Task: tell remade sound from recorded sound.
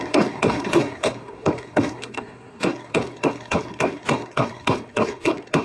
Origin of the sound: remade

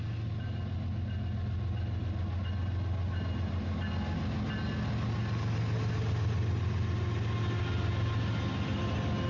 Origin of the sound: recorded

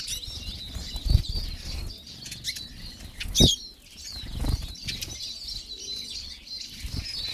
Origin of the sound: recorded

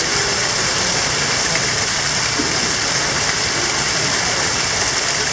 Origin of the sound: recorded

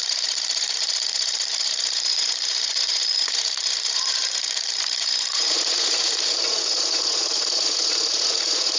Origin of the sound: remade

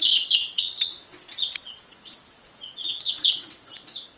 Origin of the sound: remade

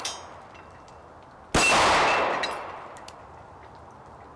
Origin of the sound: recorded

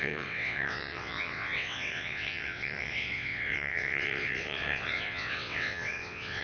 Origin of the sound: remade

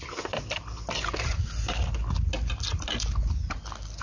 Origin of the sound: recorded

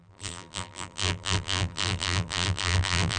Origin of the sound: remade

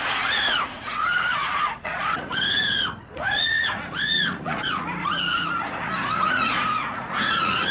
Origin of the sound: remade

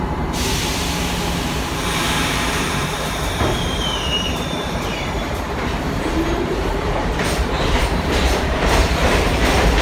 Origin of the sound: remade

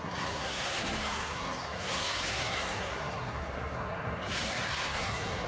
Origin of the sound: remade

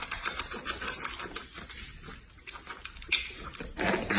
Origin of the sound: recorded